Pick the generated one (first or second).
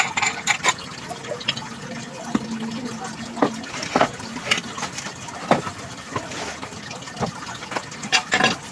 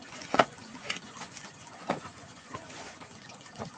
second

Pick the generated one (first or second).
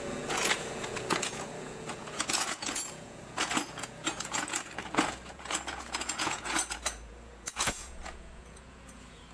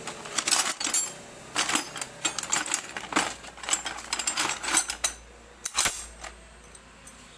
first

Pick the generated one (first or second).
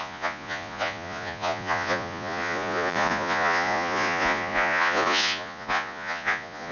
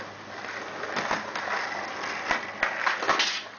first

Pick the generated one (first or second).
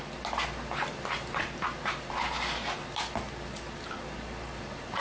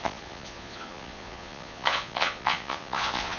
second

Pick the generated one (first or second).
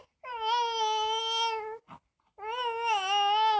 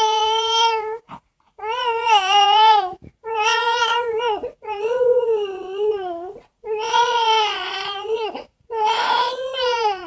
second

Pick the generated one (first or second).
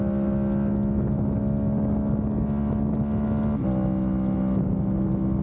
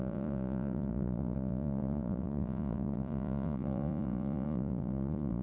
second